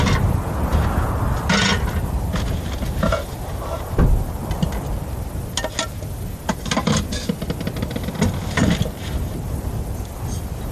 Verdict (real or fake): real